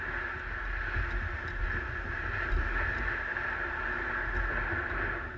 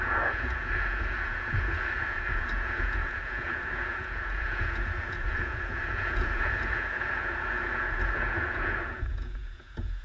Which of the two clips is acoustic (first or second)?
first